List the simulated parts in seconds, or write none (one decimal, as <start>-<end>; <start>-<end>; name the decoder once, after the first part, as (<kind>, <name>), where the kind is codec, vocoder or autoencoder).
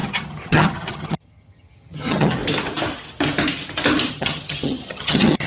0.0-2.4 (vocoder, HiFi-GAN); 4.1-5.5